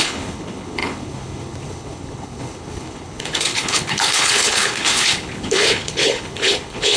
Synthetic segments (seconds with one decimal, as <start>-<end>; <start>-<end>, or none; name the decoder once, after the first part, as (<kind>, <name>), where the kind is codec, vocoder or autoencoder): 0.0-7.0 (codec, HILCodec)

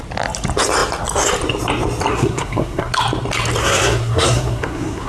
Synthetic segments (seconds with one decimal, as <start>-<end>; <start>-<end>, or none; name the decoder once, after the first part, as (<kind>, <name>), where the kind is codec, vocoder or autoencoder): 2.1-2.9 (codec, SNAC); 3.6-5.1

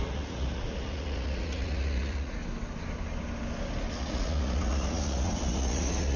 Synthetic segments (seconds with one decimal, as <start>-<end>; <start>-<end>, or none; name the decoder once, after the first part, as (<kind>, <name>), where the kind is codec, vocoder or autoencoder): 0.0-2.4 (vocoder, Vocos); 3.9-6.2

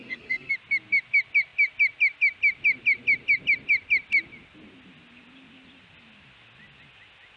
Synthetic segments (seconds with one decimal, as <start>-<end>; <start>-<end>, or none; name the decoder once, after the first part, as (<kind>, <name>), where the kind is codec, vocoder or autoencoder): 0.0-0.5 (codec, SNAC)

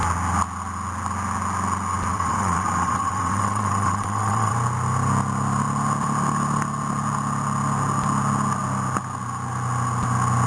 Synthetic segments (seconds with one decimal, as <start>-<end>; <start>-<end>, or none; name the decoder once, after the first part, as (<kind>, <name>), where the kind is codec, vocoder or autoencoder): 2.1-4.5 (vocoder, WaveNeXt)

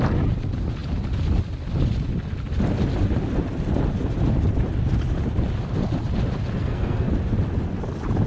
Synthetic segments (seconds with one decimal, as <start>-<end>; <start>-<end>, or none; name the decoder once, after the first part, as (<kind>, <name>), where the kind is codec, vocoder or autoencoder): 6.6-7.1 (codec, SNAC)

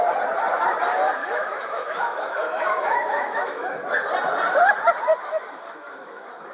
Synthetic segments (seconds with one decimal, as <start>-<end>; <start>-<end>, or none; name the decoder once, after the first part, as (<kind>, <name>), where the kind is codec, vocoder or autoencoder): 1.2-3.8 (autoencoder, DAC-VAE); 5.1-6.5